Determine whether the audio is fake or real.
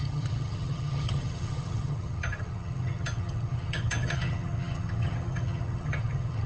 fake